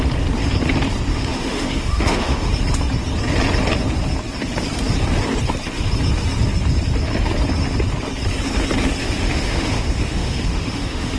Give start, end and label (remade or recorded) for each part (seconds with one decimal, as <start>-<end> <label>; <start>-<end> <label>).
0.0-1.1 recorded; 1.1-2.5 remade; 2.5-9.0 recorded; 9.0-11.2 remade